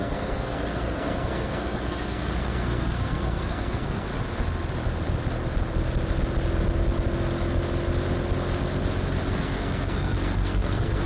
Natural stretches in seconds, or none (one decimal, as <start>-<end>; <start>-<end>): 4.1-9.3